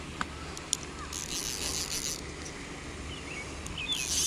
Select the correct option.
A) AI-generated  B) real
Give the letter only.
B